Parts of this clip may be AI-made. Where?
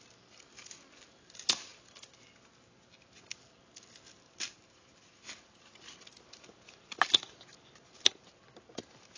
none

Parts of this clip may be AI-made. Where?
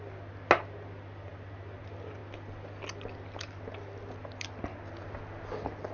none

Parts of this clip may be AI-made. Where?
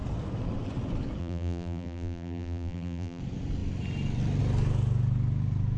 1.2-3.2 (vocoder, BigVGAN v2)